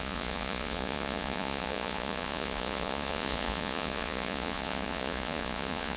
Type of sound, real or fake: fake